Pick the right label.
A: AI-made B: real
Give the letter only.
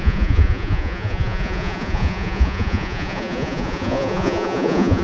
A